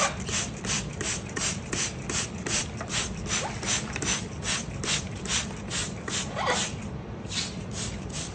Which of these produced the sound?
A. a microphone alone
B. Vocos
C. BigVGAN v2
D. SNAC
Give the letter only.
C